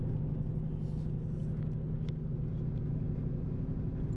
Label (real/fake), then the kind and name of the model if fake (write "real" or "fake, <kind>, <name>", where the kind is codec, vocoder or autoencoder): real